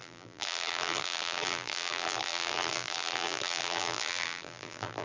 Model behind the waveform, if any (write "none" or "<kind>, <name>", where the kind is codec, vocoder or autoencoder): vocoder, BigVGAN v2